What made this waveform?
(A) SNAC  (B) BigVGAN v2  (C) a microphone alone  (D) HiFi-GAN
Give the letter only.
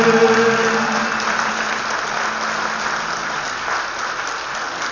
C